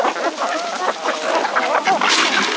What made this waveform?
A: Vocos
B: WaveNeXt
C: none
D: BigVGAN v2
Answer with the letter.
C